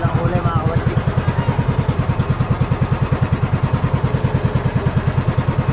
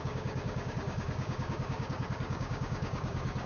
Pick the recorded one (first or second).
first